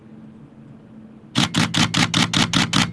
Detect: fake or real real